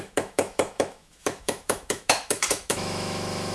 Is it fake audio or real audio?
fake